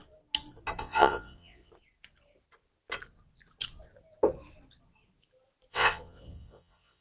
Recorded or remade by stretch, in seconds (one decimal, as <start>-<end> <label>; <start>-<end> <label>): 0.0-0.8 recorded; 0.8-1.7 remade; 1.7-5.7 recorded; 5.7-7.0 remade